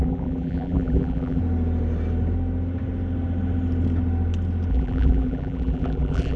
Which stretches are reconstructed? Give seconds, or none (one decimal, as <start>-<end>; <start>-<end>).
0.0-1.4; 4.7-6.4